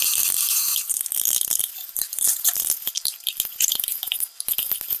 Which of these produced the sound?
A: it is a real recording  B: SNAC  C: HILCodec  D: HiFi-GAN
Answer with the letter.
A